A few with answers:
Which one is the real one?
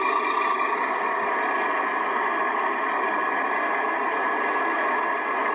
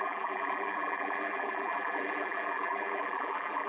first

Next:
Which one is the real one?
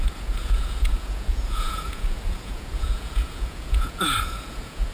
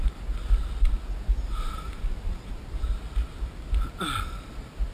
second